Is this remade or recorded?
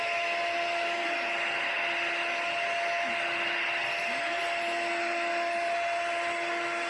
recorded